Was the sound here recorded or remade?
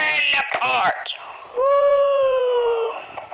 remade